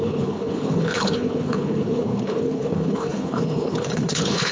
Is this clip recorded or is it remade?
remade